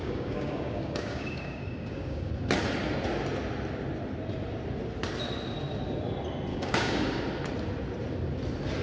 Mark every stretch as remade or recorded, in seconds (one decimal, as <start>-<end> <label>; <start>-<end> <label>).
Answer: 0.0-2.3 remade; 2.3-6.5 recorded; 6.5-7.2 remade; 7.2-8.8 recorded